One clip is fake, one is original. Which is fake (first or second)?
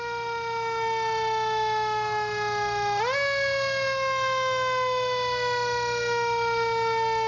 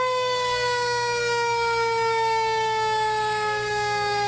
second